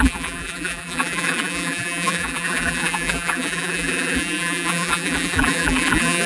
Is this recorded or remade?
remade